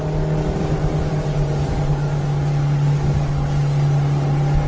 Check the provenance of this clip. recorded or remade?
recorded